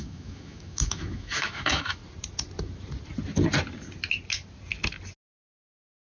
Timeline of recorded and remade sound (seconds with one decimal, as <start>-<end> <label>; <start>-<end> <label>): 0.0-2.0 remade; 2.0-6.1 recorded